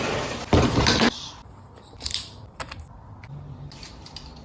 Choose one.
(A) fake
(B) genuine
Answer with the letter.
A